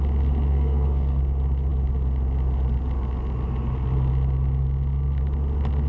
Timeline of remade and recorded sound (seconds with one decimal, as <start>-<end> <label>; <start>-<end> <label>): 0.0-0.5 recorded; 0.5-1.2 remade; 1.2-5.9 recorded